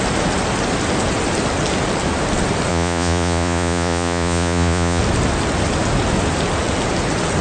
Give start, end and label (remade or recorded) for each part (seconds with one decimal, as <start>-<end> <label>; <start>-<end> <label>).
0.0-2.7 recorded; 2.7-5.0 remade; 5.0-7.4 recorded